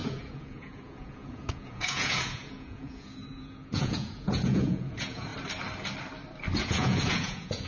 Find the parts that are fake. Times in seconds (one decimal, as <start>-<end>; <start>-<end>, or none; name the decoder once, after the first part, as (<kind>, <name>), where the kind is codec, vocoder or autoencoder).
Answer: 0.0-5.3 (vocoder, Vocos); 6.6-7.7